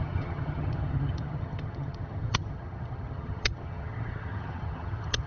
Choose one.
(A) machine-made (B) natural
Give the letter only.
A